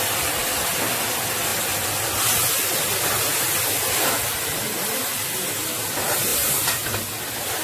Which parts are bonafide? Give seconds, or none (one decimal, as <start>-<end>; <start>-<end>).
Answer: 0.0-7.6